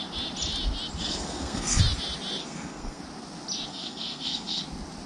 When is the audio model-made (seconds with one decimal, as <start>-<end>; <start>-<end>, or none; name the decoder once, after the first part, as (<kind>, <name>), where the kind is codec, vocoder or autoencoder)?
1.0-1.8 (codec, SNAC); 2.4-3.0; 3.7-4.6